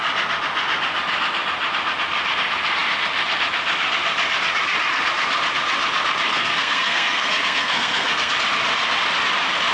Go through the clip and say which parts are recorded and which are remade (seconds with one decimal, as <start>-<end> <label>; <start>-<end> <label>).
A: 0.0-6.3 recorded; 6.3-8.3 remade; 8.3-9.7 recorded